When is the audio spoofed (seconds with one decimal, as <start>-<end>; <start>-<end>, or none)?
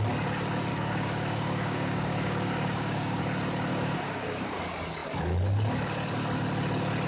0.7-3.2; 3.7-4.6